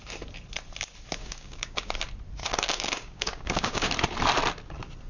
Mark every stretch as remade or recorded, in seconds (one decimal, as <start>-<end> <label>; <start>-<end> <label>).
0.0-1.2 recorded; 1.2-1.9 remade; 1.9-2.4 recorded; 2.4-3.9 remade; 3.9-5.1 recorded